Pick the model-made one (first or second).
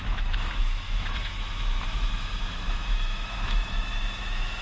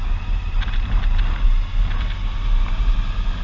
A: first